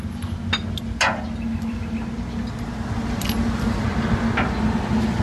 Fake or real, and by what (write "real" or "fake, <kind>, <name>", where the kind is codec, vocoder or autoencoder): real